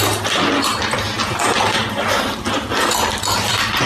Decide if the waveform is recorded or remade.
recorded